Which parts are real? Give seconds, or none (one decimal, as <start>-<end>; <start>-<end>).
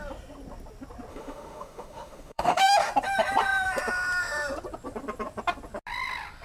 0.0-1.1; 2.9-6.4